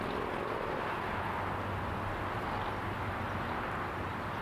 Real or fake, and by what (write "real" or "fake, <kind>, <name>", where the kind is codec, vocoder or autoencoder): real